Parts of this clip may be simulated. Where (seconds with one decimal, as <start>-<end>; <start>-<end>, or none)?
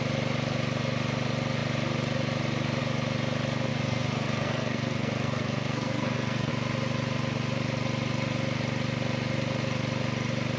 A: 3.7-6.5